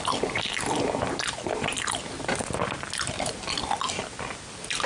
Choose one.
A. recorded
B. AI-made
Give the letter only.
A